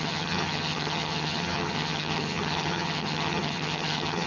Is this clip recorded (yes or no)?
no